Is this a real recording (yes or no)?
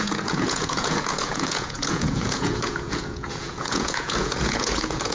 no